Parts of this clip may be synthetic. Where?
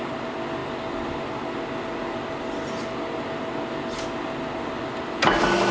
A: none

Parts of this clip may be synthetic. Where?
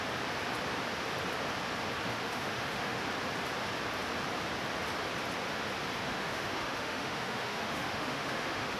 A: 2.1-3.0 (autoencoder, DAC-VAE); 6.1-8.8